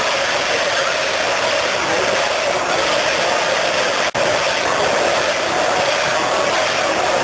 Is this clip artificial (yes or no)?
no